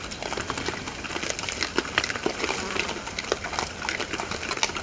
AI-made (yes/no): no